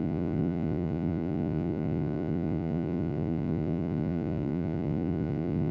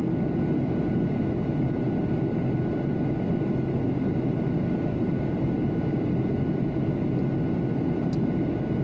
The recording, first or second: second